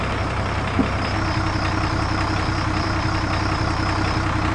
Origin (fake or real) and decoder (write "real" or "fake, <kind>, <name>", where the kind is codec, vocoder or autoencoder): real